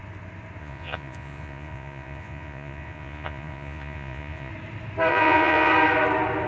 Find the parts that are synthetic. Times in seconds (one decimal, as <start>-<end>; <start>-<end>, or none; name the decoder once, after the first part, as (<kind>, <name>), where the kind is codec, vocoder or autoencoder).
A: 0.6-4.5 (vocoder, Vocos); 5.1-5.7